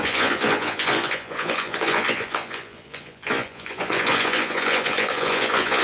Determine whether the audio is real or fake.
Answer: fake